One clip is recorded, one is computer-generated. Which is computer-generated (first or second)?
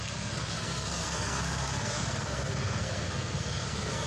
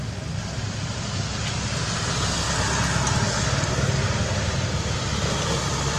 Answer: first